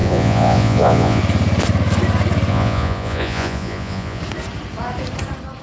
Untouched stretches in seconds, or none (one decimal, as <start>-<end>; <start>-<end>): 1.2-2.5; 4.2-5.6